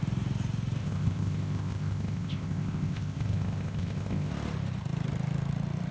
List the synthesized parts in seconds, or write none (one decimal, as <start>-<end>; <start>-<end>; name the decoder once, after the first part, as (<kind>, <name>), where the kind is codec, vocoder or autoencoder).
0.8-4.3 (codec, ZipCodec)